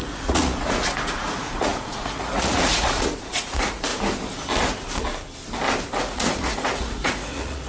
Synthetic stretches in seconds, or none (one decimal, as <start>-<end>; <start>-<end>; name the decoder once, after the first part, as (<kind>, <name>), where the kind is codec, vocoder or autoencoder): 0.0-3.9 (vocoder, Vocos); 5.9-7.7